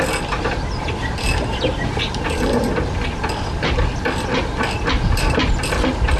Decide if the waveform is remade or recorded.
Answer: recorded